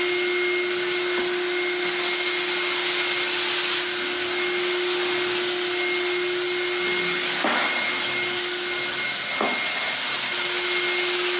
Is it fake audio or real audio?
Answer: real